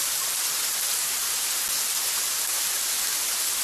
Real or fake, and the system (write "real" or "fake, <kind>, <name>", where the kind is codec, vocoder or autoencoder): real